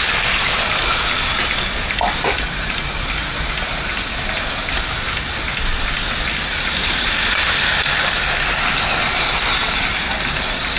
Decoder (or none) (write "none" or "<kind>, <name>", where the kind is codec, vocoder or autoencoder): none